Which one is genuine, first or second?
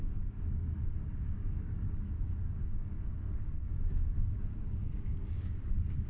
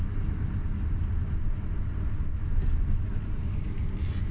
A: second